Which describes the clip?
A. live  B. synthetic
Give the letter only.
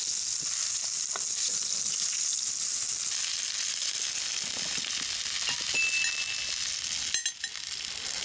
A